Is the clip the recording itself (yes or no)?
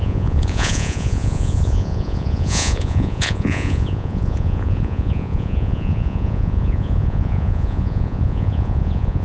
no